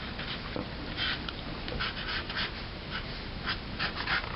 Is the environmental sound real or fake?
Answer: real